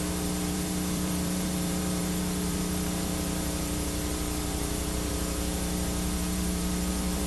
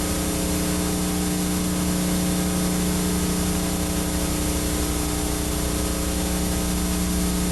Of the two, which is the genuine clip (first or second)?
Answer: second